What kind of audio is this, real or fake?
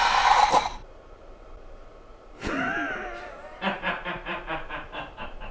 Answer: fake